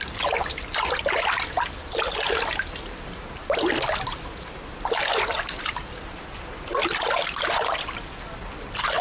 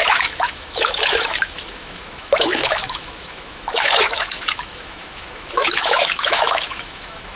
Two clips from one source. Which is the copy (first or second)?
second